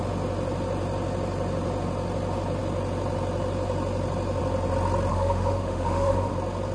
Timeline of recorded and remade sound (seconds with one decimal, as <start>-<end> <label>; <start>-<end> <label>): 0.0-5.1 recorded; 5.1-6.3 remade; 6.3-6.7 recorded